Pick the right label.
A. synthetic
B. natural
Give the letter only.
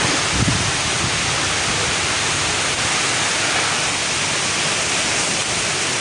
B